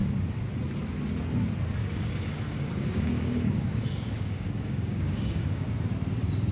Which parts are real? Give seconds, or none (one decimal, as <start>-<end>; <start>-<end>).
0.0-1.8; 5.7-6.5